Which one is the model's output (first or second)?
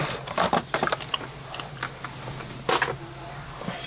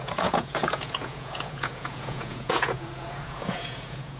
second